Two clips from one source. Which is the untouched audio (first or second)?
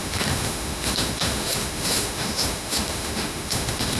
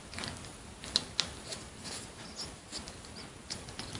second